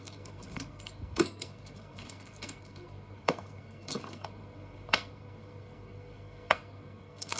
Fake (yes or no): yes